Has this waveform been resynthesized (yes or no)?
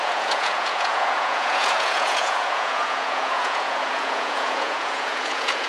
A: yes